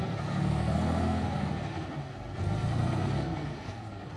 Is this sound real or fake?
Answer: fake